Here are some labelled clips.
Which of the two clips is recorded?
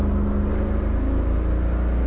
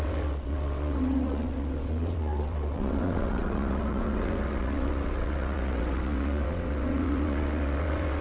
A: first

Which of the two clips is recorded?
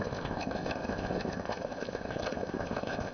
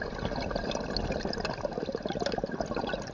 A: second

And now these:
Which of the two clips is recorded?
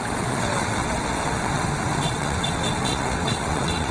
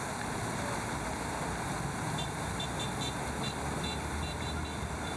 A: second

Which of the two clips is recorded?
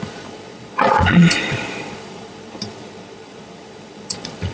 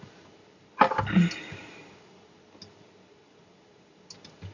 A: second